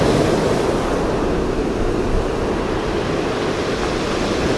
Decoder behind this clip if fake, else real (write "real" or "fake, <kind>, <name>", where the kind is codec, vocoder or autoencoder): real